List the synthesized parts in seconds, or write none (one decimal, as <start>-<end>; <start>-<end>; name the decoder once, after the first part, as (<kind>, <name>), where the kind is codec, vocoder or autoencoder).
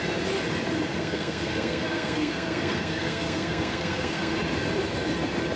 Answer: 0.9-4.3 (codec, SNAC)